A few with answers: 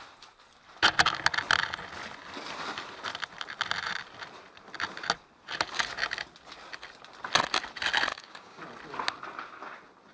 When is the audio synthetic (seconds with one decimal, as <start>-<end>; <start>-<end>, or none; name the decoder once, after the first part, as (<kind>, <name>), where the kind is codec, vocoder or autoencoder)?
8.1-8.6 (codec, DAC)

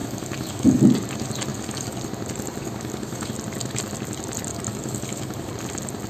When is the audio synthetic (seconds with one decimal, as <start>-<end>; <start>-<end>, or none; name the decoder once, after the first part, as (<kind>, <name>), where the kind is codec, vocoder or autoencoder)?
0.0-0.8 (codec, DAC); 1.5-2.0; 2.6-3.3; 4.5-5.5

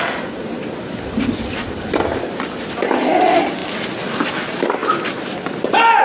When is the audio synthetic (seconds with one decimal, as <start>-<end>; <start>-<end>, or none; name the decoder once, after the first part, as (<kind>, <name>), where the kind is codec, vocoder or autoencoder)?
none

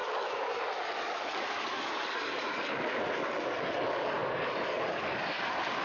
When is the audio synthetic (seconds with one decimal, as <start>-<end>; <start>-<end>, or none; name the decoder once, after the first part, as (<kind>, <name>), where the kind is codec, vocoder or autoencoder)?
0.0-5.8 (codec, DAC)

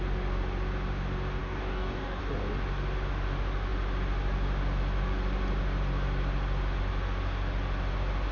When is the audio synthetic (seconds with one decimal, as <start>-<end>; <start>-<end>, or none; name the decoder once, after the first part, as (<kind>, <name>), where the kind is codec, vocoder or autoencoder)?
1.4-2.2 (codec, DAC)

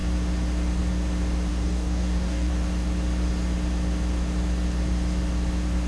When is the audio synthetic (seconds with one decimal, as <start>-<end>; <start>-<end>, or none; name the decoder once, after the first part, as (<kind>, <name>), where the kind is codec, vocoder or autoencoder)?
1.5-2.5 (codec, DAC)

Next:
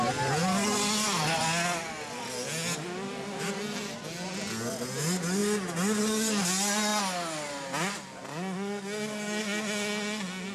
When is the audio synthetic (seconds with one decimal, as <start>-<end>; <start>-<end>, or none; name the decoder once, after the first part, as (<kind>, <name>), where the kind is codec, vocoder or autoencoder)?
none

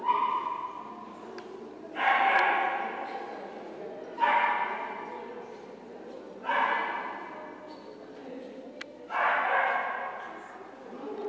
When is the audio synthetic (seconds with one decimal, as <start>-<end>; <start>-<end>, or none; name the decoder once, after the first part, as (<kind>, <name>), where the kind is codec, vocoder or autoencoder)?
none